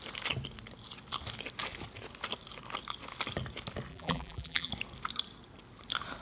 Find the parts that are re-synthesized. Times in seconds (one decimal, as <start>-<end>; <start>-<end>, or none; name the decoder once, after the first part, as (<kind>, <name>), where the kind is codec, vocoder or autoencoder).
3.9-4.7 (vocoder, BigVGAN v2)